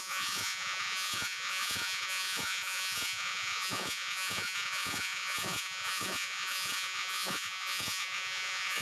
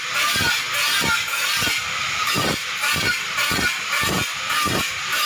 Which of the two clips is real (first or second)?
second